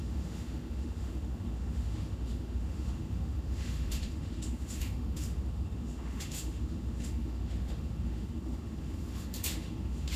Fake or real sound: fake